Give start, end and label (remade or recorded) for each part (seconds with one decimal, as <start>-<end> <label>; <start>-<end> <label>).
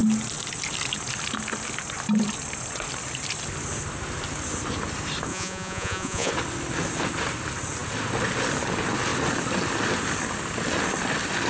0.0-5.3 recorded; 5.3-6.3 remade; 6.3-11.5 recorded